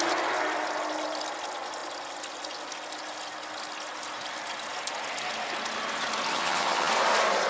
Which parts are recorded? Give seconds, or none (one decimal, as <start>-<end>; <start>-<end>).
0.0-6.3; 6.9-7.5

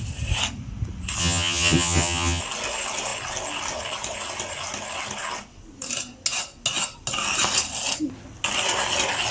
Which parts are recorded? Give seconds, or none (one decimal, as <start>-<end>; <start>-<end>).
0.0-1.2; 2.4-9.3

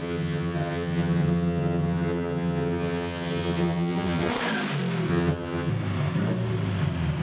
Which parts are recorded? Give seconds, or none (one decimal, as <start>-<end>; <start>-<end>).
4.3-5.1; 5.7-7.2

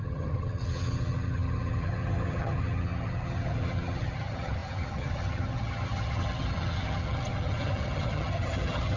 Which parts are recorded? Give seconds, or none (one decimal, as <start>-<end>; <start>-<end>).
none

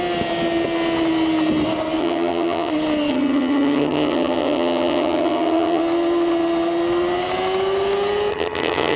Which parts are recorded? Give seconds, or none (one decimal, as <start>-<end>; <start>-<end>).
0.0-2.0; 2.7-3.1; 5.8-8.3

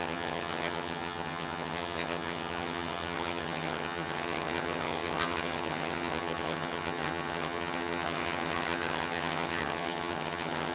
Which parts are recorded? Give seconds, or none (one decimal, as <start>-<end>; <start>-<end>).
none